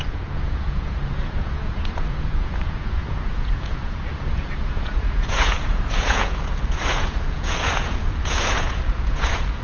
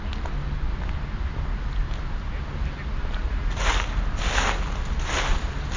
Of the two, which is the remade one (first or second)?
first